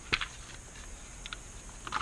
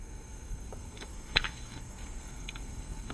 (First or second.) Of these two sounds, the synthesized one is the second